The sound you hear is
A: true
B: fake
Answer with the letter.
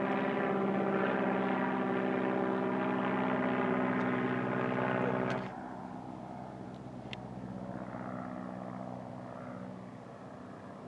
A